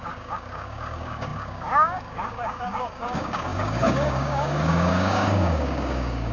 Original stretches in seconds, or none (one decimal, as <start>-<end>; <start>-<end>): none